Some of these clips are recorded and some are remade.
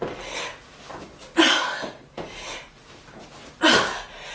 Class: recorded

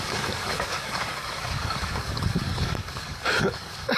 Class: remade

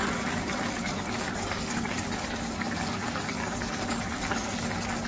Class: remade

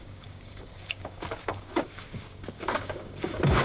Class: remade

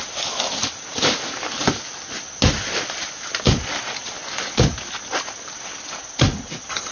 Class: recorded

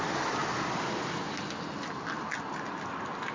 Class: recorded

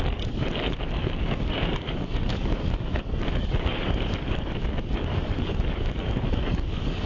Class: remade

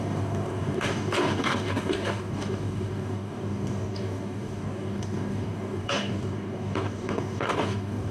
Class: remade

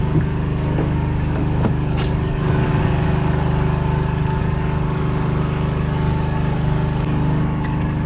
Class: remade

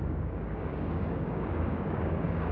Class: remade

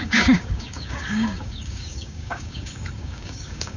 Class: remade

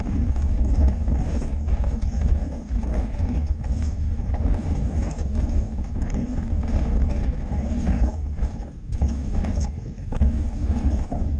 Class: remade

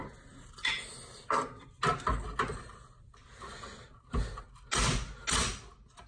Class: recorded